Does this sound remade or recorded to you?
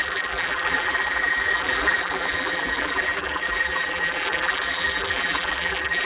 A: remade